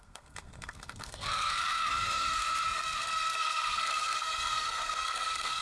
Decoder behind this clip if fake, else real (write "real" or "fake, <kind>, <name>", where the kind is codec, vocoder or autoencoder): fake, codec, SNAC